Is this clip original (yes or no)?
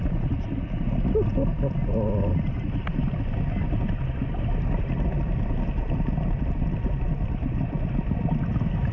yes